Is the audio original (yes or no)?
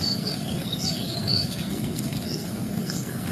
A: no